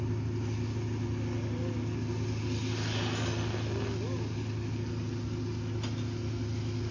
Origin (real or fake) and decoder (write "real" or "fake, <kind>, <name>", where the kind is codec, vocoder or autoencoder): real